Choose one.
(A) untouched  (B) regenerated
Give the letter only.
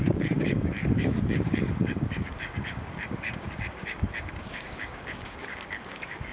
B